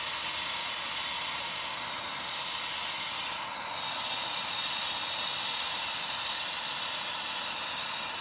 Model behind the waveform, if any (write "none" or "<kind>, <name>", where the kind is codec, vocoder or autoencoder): none